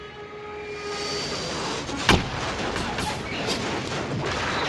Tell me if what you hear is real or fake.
real